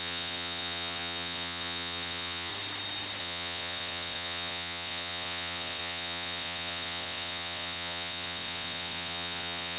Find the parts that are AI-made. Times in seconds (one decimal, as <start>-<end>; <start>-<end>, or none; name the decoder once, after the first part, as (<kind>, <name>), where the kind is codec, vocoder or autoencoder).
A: 0.0-2.5 (vocoder, WaveNeXt); 3.2-9.8